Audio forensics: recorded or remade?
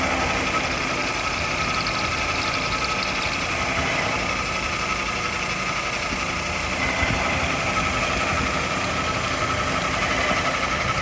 recorded